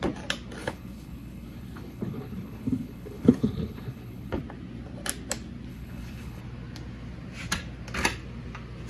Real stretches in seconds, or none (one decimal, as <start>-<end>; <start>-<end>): 0.0-0.6; 4.4-5.7; 6.4-8.9

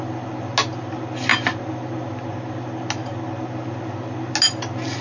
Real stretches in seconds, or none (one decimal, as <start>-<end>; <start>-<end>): 0.0-5.0

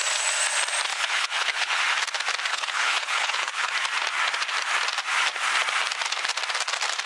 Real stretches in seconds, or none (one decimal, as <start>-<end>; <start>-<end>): 0.0-0.9; 1.8-2.5; 3.7-7.1

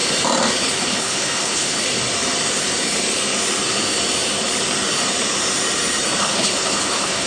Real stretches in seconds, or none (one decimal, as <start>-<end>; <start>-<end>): 0.0-0.6; 1.8-6.2

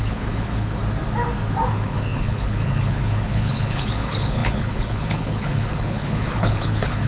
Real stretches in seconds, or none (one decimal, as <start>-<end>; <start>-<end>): 0.8-1.7